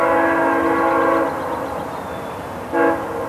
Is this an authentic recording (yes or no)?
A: yes